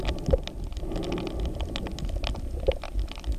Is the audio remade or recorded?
recorded